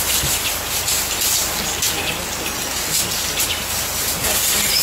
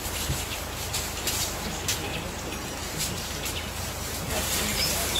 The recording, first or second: first